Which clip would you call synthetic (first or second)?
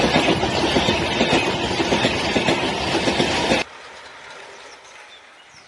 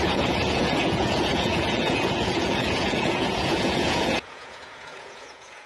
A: second